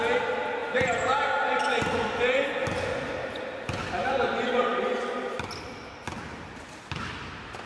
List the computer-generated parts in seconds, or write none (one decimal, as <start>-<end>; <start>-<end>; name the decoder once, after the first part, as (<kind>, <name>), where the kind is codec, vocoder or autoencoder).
0.6-1.2 (vocoder, BigVGAN v2)